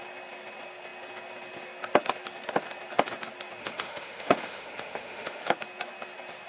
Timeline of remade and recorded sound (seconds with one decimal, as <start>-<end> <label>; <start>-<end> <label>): 0.0-3.6 recorded; 3.6-5.5 remade; 5.5-6.5 recorded